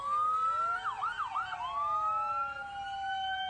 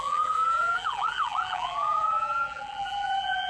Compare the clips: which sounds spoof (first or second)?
second